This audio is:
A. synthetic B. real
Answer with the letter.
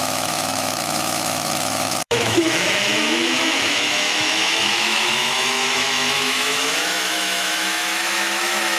A